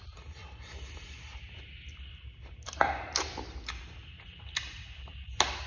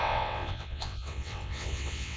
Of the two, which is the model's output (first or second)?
second